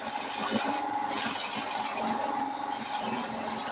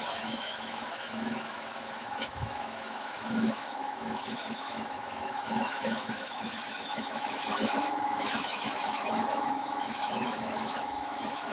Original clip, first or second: first